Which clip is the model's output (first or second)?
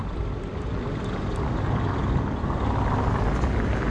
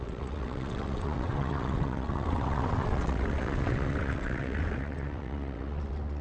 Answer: second